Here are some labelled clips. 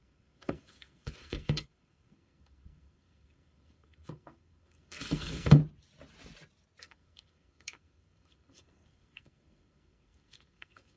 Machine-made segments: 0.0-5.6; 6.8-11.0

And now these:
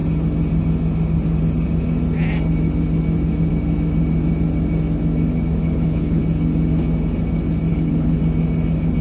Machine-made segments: 5.6-6.2; 7.7-8.2

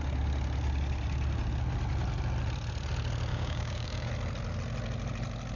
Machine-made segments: 3.3-4.1

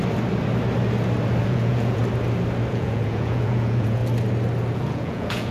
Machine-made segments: 1.4-2.0; 2.7-4.0; 4.7-5.5

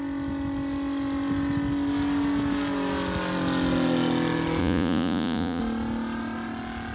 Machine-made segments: 4.6-5.6

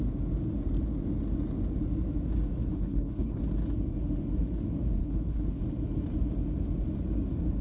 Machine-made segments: 2.7-3.4; 5.0-5.6

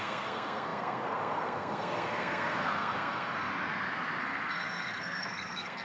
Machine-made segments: 0.0-3.5; 4.2-5.8

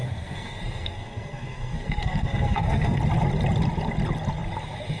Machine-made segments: 0.0-3.0